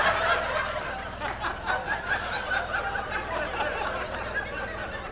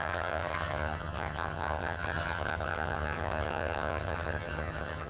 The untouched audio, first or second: first